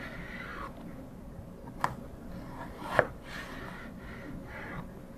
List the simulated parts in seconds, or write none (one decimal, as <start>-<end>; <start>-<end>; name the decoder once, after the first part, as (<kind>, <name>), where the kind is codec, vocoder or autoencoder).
none